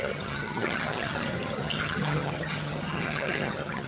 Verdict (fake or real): fake